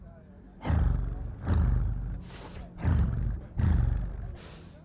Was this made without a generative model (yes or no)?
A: yes